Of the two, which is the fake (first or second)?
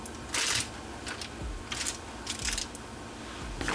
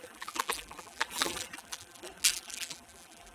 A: second